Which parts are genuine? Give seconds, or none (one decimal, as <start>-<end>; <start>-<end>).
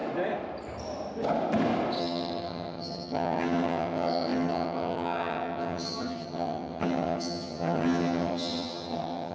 0.0-2.0